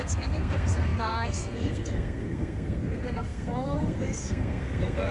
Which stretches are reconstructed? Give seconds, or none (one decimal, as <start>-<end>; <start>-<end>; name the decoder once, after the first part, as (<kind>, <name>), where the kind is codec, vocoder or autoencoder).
0.0-5.1 (codec, SNAC)